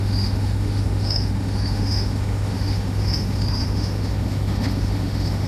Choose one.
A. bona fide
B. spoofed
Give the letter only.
B